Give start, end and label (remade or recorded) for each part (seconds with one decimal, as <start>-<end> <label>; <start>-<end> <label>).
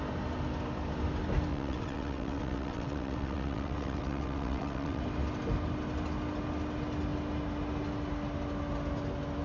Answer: 0.0-1.5 recorded; 1.5-5.0 remade; 5.0-9.4 recorded